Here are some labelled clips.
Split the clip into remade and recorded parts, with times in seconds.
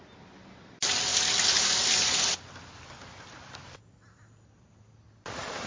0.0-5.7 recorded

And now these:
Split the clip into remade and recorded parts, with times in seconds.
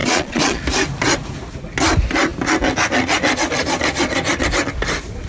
0.0-0.6 remade; 0.6-5.3 recorded